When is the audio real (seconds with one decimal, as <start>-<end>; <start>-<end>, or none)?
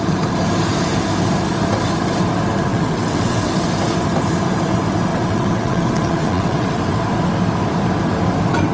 0.0-2.7; 3.5-5.1; 6.8-8.7